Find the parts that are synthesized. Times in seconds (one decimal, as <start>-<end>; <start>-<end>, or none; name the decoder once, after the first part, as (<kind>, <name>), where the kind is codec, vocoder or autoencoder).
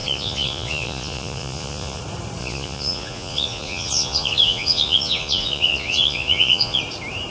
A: 0.0-2.0 (vocoder, Vocos); 2.4-6.8